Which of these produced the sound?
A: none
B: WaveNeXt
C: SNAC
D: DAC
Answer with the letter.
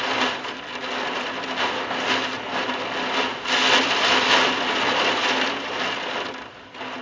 A